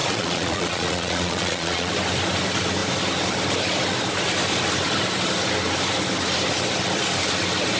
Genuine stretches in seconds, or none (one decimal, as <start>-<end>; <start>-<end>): 1.9-7.8

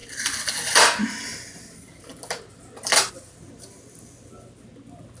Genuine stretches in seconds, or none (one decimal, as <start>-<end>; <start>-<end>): 0.0-5.2

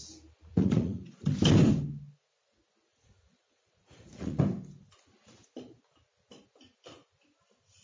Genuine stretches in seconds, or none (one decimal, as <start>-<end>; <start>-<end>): 0.0-0.5; 1.1-2.9; 4.4-7.8

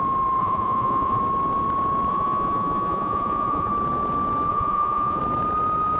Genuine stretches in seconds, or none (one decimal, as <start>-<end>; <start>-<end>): 0.0-0.4; 1.2-2.1; 3.7-4.5; 5.2-6.0

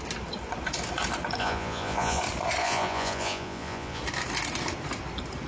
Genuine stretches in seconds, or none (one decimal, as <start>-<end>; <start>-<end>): 0.0-1.4; 2.2-2.6; 4.0-5.5

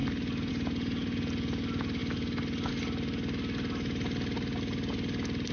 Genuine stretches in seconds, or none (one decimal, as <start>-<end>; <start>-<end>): 0.0-5.5

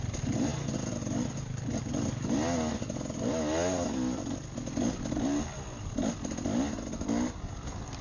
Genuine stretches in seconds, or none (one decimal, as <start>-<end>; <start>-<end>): 0.0-8.0

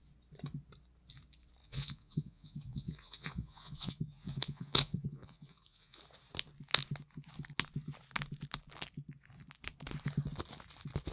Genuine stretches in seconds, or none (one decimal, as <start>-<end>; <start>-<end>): 0.0-1.6; 6.0-11.1